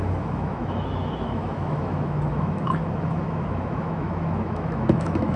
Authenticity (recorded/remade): remade